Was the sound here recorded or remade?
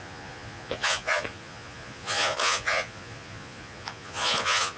remade